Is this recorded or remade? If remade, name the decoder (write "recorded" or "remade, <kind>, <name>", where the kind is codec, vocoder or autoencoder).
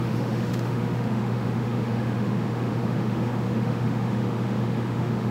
remade, autoencoder, DAC-VAE